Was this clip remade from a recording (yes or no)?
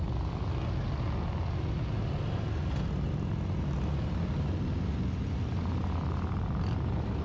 no